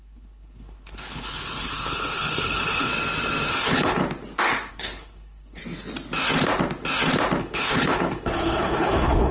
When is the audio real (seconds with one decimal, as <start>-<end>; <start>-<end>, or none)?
2.9-3.5; 4.0-4.7; 5.6-7.4